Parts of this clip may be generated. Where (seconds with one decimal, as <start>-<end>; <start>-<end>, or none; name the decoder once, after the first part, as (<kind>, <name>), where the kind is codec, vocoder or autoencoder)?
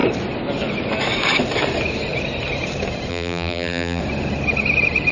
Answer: 3.1-4.0 (vocoder, BigVGAN v2)